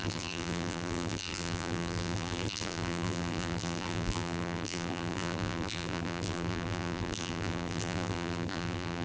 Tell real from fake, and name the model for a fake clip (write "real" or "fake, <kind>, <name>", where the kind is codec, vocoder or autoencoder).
fake, vocoder, BigVGAN v2